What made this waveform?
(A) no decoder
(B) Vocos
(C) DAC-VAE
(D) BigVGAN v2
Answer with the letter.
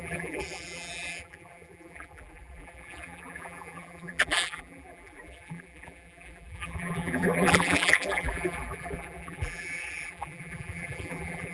D